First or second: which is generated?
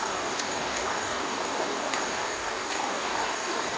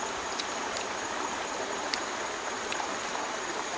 first